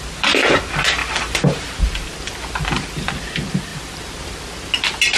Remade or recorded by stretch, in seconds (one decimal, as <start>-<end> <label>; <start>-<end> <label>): 0.0-1.0 recorded; 1.0-3.1 remade; 3.1-3.7 recorded; 3.7-4.5 remade; 4.5-5.2 recorded